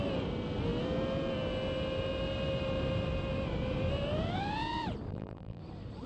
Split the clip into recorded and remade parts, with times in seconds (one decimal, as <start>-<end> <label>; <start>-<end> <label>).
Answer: 0.0-5.1 recorded; 5.1-5.6 remade; 5.6-6.1 recorded